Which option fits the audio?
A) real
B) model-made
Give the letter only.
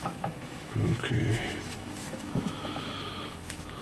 B